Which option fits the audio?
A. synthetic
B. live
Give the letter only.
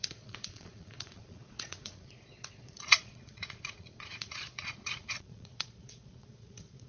A